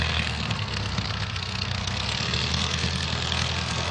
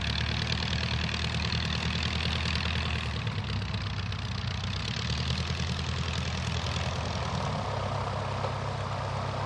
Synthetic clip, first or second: first